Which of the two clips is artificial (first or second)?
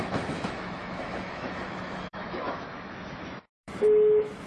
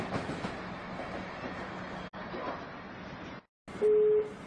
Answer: first